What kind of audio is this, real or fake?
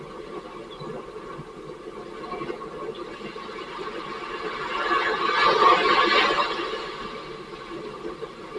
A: real